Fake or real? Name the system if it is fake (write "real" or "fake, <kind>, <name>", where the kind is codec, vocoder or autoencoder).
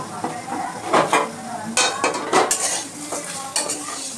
real